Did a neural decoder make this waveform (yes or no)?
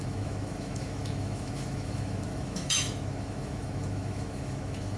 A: yes